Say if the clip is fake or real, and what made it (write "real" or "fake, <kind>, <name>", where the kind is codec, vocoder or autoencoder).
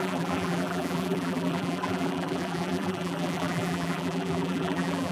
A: fake, vocoder, BigVGAN v2